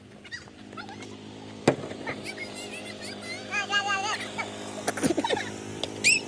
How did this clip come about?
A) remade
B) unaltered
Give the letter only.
B